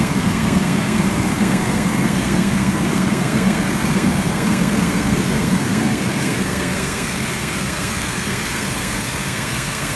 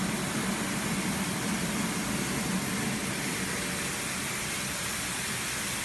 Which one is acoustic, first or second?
second